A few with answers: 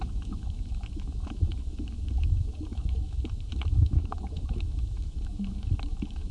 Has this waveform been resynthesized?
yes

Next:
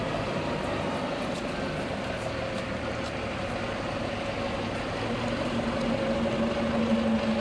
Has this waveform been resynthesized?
no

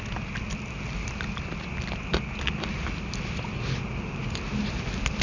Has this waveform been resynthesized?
no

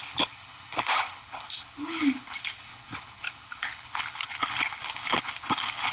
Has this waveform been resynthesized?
yes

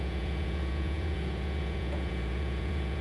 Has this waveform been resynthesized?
yes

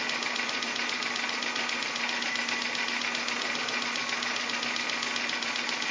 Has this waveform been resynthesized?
no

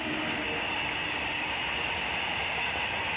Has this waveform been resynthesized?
no